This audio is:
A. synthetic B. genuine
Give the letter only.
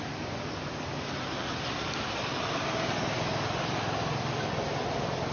B